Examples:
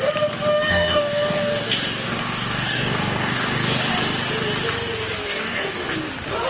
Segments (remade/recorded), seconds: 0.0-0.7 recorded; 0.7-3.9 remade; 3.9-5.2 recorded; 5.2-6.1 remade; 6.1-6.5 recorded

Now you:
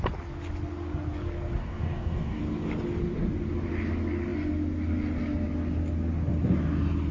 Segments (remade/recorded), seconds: 0.0-1.6 recorded; 1.6-2.4 remade; 2.4-7.1 recorded

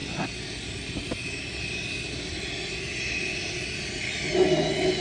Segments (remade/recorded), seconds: 0.0-5.0 recorded